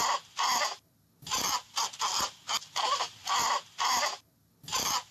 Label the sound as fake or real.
real